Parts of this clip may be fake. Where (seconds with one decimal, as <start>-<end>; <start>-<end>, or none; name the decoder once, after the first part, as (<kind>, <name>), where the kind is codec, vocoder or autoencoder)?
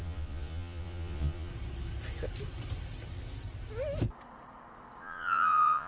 0.0-1.5 (vocoder, Vocos); 5.0-5.9